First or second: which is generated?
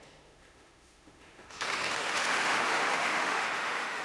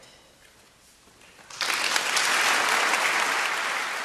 first